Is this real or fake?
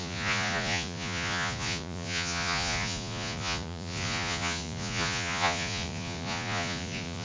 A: fake